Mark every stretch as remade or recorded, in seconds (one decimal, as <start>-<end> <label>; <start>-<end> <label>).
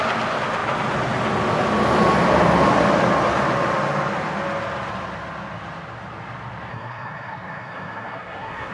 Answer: 0.0-6.7 recorded; 6.7-8.7 remade